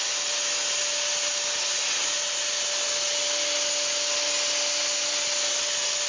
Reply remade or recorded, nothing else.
recorded